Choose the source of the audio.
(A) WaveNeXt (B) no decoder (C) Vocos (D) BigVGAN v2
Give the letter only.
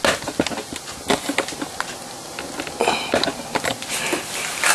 B